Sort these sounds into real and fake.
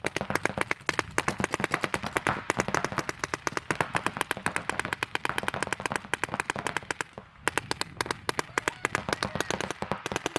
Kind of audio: real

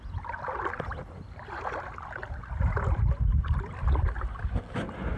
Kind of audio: real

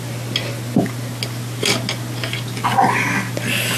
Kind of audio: real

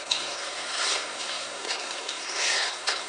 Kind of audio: fake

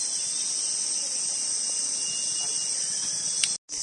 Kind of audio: real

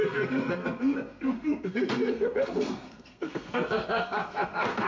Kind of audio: fake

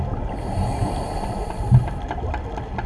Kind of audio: real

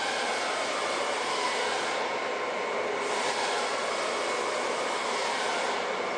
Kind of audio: real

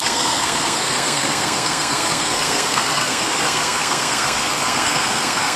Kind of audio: fake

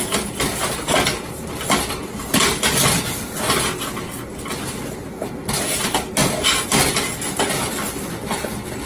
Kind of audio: real